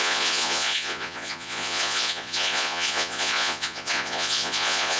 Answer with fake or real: fake